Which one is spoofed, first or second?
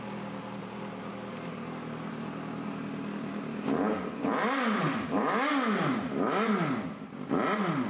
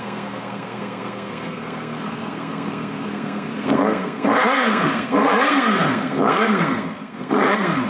second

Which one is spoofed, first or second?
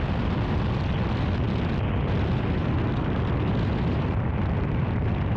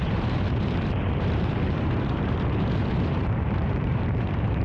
second